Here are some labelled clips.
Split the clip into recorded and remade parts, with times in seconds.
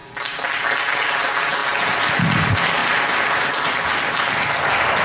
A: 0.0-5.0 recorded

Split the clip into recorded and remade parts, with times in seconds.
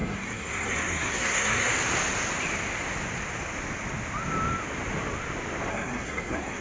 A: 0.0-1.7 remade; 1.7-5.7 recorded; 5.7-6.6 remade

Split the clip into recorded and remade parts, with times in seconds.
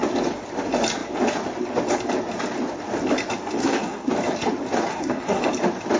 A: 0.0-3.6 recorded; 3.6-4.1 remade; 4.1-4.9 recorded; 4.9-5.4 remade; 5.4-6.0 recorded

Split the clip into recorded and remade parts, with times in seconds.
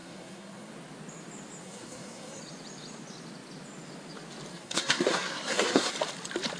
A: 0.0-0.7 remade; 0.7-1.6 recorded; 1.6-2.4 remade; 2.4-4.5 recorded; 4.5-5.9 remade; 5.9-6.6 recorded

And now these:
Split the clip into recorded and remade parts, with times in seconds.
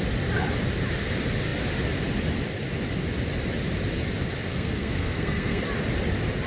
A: 0.0-4.5 recorded; 4.5-5.6 remade; 5.6-6.5 recorded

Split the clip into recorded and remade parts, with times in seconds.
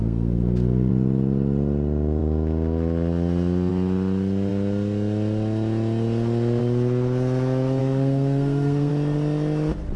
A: 0.0-0.9 remade; 0.9-7.8 recorded; 7.8-8.9 remade; 8.9-10.0 recorded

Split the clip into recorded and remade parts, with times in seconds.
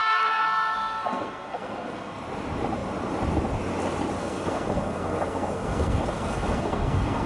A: 0.0-2.2 remade; 2.2-4.2 recorded; 4.2-7.3 remade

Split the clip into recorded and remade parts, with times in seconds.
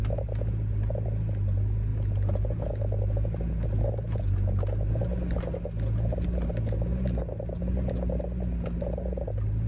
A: 0.0-9.7 recorded